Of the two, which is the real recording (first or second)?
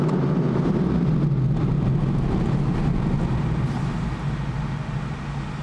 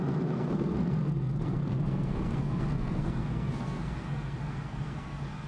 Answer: first